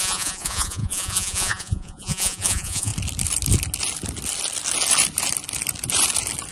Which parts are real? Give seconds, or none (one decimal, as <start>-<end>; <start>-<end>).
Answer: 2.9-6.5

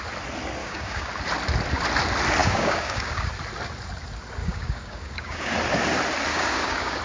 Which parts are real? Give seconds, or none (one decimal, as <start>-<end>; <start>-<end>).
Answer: 0.0-0.6; 1.1-2.4; 3.3-4.4; 5.5-6.3

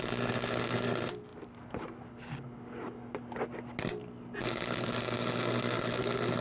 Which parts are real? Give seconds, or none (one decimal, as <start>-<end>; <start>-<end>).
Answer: 0.0-6.4

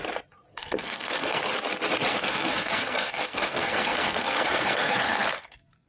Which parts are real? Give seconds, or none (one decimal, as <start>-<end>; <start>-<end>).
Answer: 0.0-0.5; 1.4-2.1